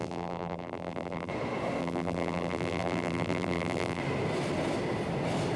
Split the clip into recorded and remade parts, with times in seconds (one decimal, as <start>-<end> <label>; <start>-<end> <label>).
0.0-1.3 remade; 1.3-1.8 recorded; 1.8-4.0 remade; 4.0-5.6 recorded